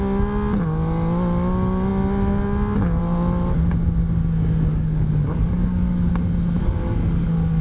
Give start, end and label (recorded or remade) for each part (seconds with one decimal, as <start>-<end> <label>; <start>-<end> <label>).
0.0-4.7 recorded; 4.7-6.1 remade; 6.1-6.6 recorded; 6.6-7.6 remade